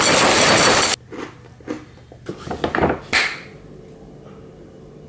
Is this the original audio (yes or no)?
yes